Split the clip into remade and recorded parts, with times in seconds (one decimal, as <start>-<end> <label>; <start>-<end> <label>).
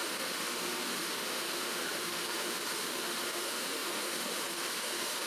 0.0-5.3 remade